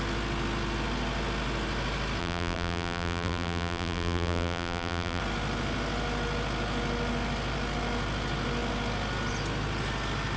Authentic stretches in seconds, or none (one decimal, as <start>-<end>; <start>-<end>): 0.0-2.2; 5.2-10.4